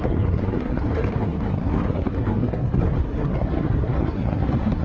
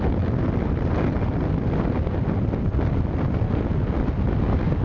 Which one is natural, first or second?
second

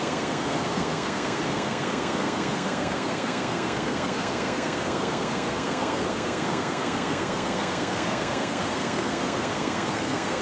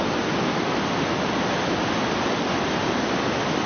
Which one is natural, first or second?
second